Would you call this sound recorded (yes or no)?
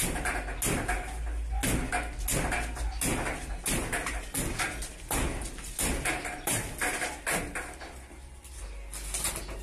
yes